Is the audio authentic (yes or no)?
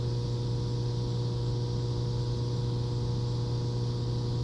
yes